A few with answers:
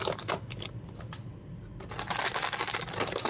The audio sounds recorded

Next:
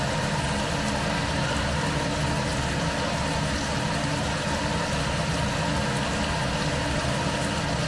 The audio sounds recorded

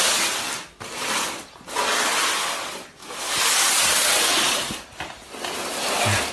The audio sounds recorded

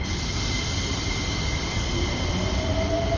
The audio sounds remade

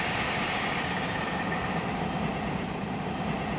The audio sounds recorded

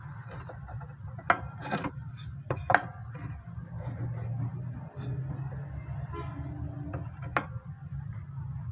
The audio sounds recorded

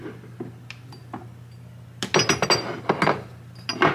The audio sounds recorded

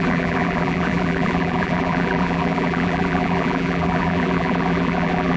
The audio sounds remade